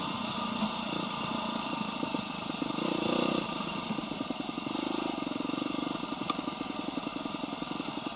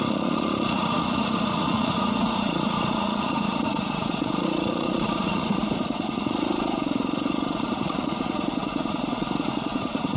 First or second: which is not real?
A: second